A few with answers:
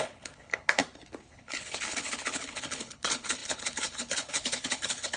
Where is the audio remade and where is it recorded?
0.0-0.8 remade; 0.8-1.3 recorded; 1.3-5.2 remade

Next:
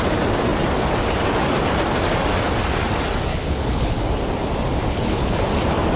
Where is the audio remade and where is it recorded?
0.0-3.3 recorded; 3.3-4.0 remade; 4.0-4.8 recorded; 4.8-5.4 remade; 5.4-6.0 recorded

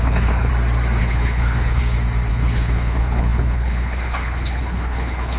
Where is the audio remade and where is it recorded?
0.0-0.5 remade; 0.5-1.0 recorded; 1.0-1.8 remade; 1.8-2.3 recorded; 2.3-5.4 remade

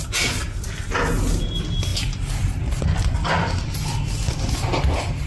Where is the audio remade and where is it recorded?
0.0-5.3 recorded

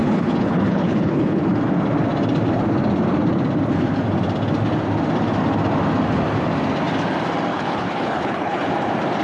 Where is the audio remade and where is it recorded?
0.0-1.4 remade; 1.4-7.5 recorded; 7.5-8.7 remade; 8.7-9.2 recorded